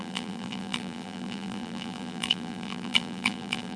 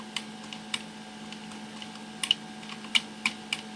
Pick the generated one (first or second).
first